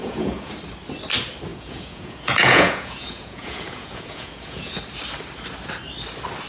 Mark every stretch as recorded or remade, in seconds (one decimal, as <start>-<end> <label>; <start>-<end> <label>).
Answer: 0.0-0.5 remade; 0.5-1.5 recorded; 1.5-4.8 remade; 4.8-6.5 recorded